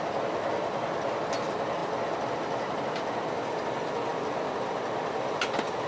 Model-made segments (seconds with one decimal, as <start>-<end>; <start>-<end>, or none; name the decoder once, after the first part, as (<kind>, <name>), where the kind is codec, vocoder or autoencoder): none